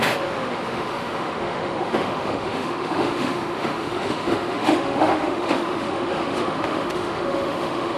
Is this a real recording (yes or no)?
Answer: no